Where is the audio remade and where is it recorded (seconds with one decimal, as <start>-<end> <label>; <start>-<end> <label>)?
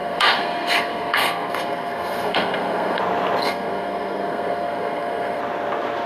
0.0-3.0 remade; 3.0-3.4 recorded; 3.4-5.4 remade; 5.4-6.1 recorded